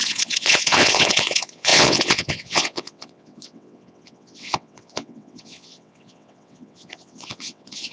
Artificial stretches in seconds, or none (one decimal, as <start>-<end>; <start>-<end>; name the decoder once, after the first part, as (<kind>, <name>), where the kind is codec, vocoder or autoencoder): 0.0-7.9 (vocoder, WaveNeXt)